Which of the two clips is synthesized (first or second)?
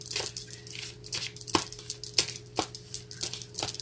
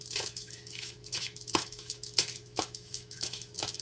second